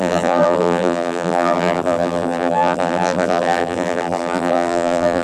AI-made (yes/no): yes